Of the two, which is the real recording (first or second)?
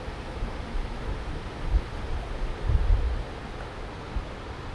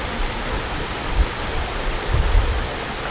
first